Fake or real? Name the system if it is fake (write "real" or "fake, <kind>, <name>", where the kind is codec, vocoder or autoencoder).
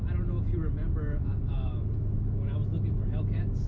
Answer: real